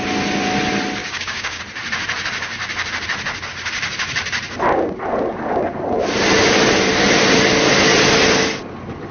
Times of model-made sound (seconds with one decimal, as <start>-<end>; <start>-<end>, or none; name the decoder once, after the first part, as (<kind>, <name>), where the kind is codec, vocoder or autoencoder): 1.0-1.6 (codec, DAC)